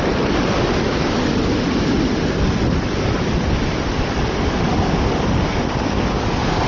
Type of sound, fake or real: real